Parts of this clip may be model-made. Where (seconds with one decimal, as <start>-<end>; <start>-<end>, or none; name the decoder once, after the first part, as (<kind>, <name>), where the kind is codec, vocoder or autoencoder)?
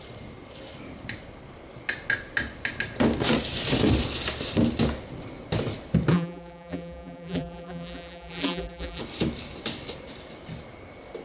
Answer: 6.1-9.0 (vocoder, BigVGAN v2)